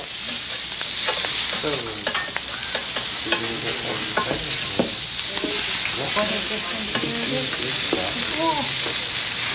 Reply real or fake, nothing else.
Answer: real